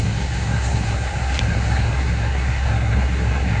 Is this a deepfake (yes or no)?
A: yes